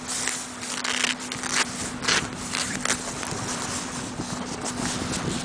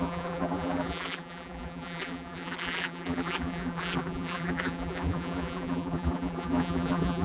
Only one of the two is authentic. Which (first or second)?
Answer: first